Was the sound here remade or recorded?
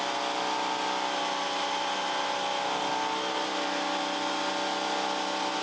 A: recorded